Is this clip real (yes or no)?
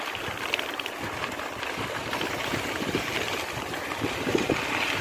no